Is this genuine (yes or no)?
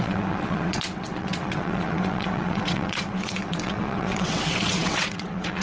no